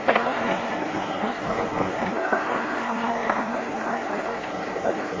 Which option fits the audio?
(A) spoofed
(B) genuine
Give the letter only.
A